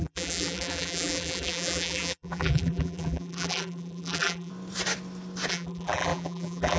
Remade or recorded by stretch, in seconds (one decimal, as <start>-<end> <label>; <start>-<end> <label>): 0.0-4.5 remade; 4.5-5.5 recorded; 5.5-6.8 remade